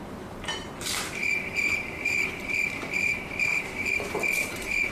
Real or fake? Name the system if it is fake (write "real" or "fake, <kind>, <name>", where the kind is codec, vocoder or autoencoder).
fake, vocoder, BigVGAN v2